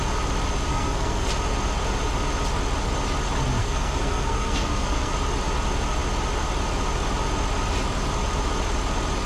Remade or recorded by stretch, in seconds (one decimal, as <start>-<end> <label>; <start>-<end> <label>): 0.0-0.7 recorded; 0.7-1.3 remade; 1.3-3.6 recorded; 3.6-5.1 remade; 5.1-9.3 recorded